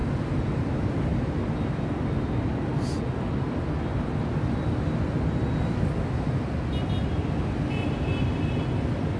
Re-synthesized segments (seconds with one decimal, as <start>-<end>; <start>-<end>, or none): none